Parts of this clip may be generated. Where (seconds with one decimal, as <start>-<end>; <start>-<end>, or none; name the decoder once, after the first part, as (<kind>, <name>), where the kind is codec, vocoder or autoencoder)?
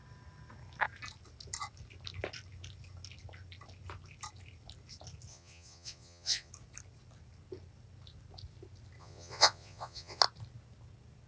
5.3-6.5 (vocoder, Vocos); 9.0-10.2